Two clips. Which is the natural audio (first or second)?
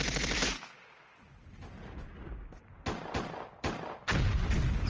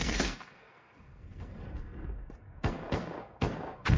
first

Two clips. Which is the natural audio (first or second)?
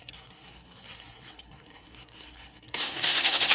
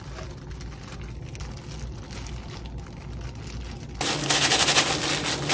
second